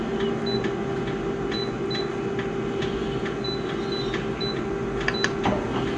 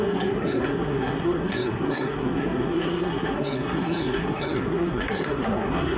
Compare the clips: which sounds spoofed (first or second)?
second